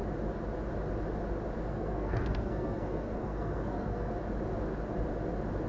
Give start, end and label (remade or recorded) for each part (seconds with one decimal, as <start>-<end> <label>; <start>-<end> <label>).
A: 0.0-1.7 recorded; 1.7-4.1 remade; 4.1-5.7 recorded